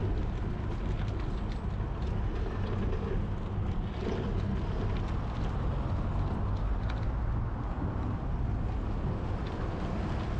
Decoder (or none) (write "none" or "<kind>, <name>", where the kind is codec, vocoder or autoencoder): none